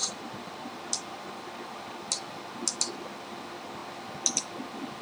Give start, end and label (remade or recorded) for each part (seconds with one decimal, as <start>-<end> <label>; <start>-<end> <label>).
0.0-5.0 recorded